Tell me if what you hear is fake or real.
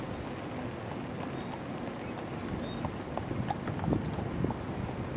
real